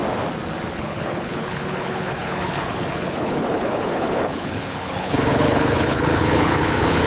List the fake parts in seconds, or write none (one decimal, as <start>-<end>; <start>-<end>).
0.7-7.1